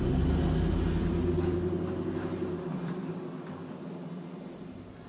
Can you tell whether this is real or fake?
real